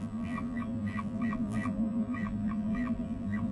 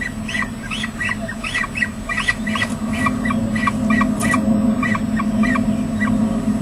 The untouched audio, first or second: second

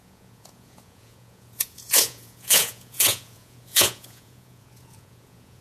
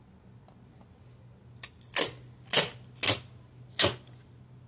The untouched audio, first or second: second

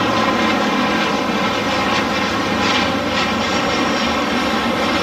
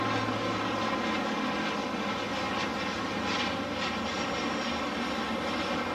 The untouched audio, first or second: second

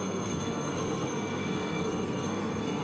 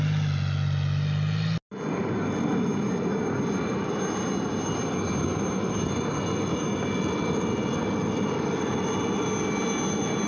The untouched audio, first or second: second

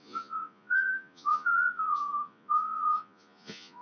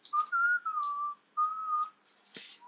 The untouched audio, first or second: second